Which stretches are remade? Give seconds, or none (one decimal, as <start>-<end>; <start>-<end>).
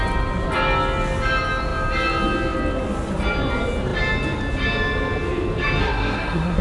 5.8-6.6